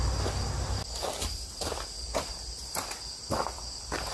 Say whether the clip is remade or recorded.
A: recorded